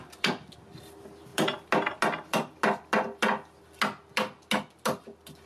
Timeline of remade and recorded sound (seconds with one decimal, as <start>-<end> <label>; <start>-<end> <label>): 0.0-5.5 recorded